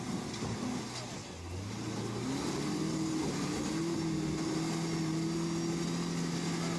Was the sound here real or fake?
real